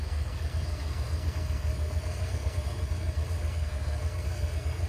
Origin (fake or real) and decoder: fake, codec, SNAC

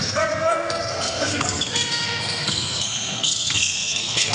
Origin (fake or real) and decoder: fake, codec, SNAC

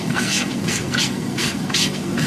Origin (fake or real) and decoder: fake, codec, SNAC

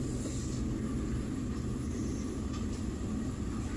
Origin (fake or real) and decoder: real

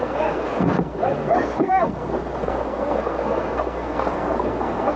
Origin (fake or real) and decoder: fake, codec, SNAC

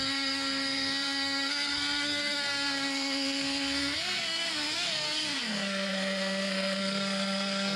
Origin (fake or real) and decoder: fake, codec, SNAC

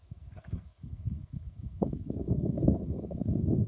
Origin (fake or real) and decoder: fake, codec, SNAC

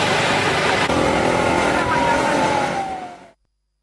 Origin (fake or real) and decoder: real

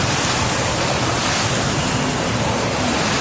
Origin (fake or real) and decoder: real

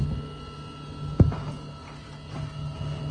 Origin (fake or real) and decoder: real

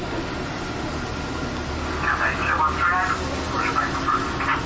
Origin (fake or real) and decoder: real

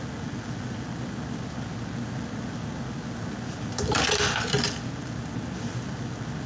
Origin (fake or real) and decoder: real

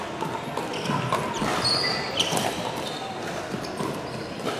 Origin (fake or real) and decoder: real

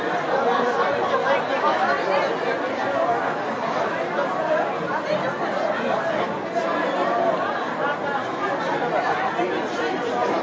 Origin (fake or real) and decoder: real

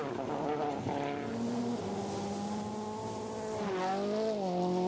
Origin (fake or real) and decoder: real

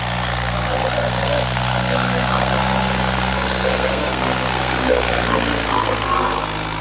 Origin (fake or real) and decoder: fake, codec, SNAC